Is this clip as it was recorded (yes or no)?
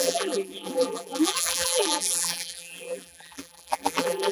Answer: no